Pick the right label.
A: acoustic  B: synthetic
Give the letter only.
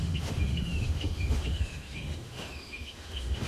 B